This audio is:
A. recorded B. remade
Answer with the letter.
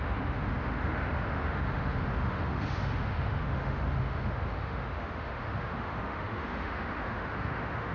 B